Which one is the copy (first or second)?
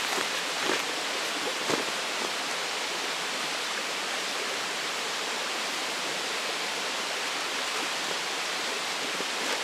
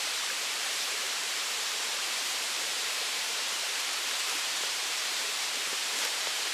second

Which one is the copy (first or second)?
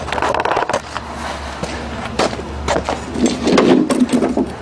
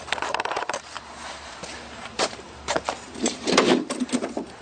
second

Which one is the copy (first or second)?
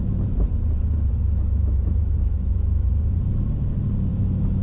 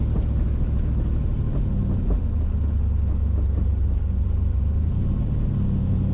first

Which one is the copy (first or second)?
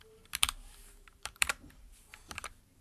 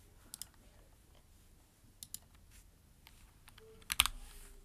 first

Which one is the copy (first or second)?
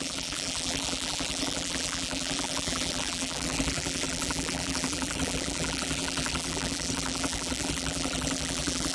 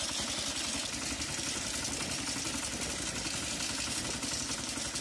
first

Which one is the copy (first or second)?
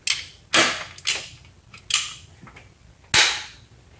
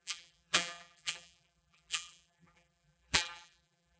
second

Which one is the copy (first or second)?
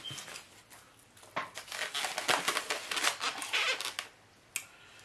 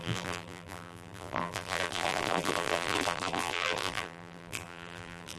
second